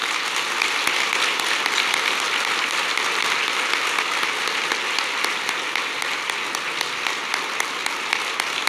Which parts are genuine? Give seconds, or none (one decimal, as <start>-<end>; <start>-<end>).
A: 0.0-8.7